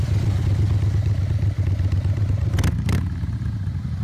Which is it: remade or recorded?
remade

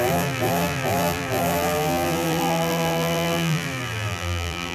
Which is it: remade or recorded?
remade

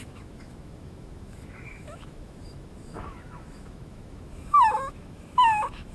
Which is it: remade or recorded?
remade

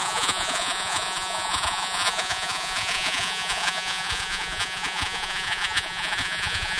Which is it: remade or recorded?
remade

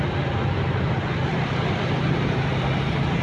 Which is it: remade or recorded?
recorded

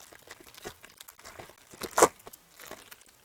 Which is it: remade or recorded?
recorded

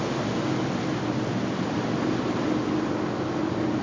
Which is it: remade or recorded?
recorded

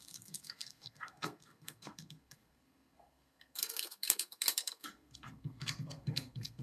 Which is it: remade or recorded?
remade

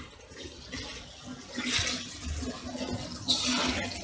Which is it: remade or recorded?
recorded